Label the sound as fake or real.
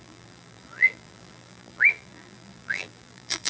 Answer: fake